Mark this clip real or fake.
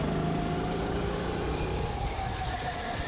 real